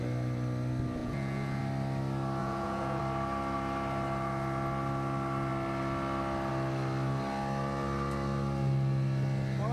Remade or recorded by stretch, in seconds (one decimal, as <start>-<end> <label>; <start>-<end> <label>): 0.0-1.0 recorded; 1.0-1.6 remade; 1.6-2.4 recorded; 2.4-3.0 remade; 3.0-9.7 recorded